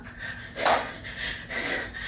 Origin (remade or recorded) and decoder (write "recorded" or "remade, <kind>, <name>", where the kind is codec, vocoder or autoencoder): recorded